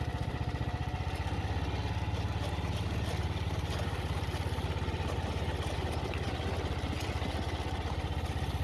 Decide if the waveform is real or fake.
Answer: real